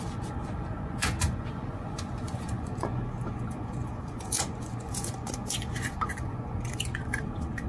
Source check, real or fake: fake